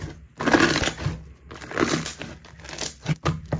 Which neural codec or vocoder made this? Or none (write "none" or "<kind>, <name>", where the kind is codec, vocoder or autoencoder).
none